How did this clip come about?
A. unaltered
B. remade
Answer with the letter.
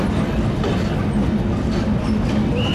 A